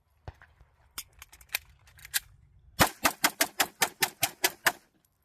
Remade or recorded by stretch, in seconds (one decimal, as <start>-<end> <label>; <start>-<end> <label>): 0.0-5.2 recorded